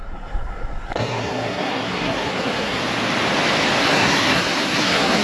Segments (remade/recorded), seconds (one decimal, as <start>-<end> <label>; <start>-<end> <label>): 0.0-2.8 remade; 2.8-3.8 recorded; 3.8-5.2 remade